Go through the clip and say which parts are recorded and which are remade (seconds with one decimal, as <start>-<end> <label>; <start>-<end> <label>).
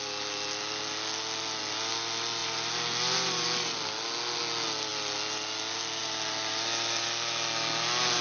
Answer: 0.0-8.2 recorded